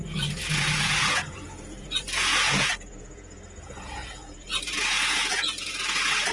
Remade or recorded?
remade